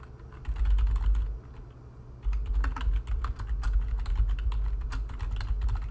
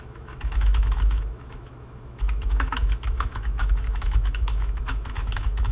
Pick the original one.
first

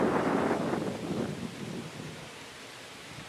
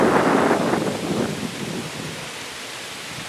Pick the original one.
first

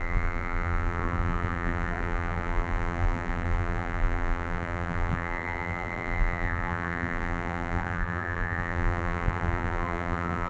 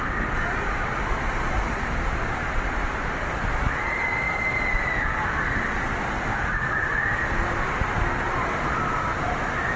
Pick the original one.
second